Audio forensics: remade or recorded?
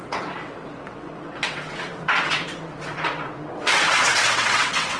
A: remade